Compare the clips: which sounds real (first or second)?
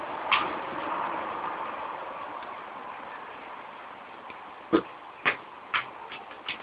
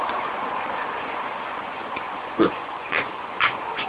first